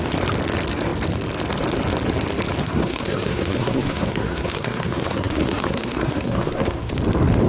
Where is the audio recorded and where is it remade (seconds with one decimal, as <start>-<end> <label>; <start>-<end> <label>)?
0.0-2.6 recorded; 2.6-6.9 remade; 6.9-7.5 recorded